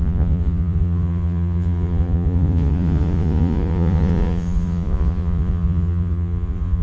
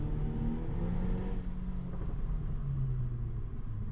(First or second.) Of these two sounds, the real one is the second